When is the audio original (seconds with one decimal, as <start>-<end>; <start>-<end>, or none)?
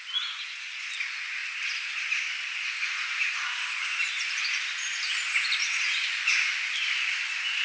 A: 0.0-7.6